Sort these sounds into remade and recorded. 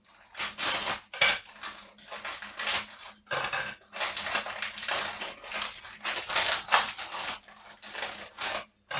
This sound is recorded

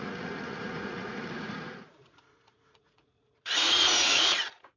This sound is remade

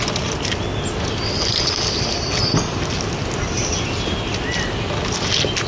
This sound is recorded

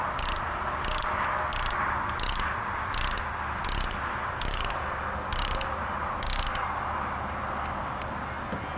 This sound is recorded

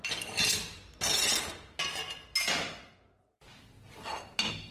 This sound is recorded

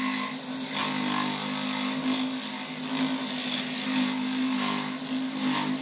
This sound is recorded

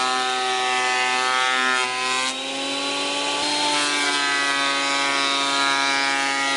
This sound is recorded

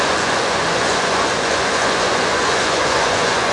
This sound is remade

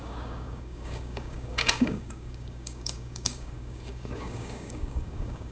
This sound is remade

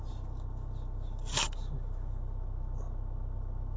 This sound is recorded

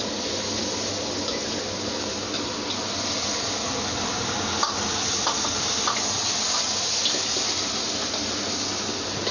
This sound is recorded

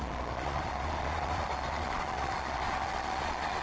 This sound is remade